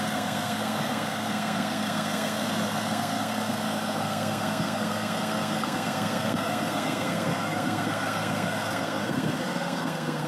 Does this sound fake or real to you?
fake